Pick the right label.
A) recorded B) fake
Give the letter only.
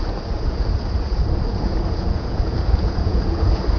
B